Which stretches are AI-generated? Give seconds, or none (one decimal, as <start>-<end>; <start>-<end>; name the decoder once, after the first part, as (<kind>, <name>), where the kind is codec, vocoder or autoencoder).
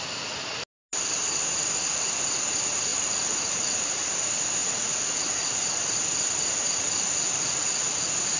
2.9-4.0 (vocoder, Vocos); 4.6-5.3